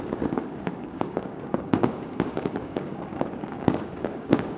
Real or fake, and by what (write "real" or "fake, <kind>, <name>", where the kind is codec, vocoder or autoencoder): fake, codec, DAC